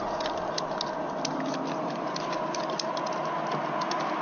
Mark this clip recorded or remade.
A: recorded